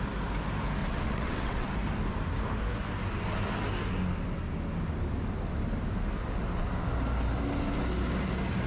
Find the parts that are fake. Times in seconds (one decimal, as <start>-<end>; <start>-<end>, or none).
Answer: 0.8-1.7